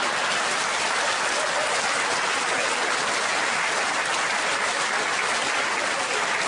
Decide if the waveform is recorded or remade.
recorded